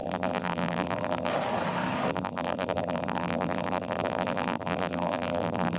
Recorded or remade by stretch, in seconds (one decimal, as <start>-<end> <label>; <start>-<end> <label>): 0.0-1.3 remade; 1.3-2.1 recorded; 2.1-5.8 remade